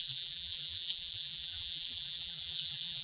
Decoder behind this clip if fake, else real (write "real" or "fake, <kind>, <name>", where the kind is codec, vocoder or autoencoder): fake, vocoder, BigVGAN v2